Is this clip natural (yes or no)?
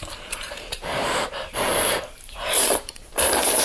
no